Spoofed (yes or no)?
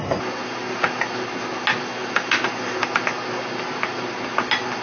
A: no